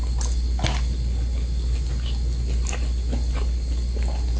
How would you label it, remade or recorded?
recorded